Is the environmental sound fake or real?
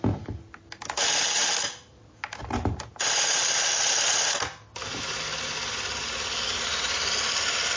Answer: real